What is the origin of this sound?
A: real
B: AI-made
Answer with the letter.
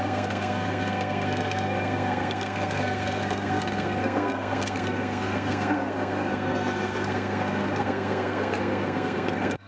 B